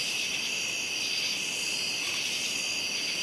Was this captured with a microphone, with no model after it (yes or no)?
yes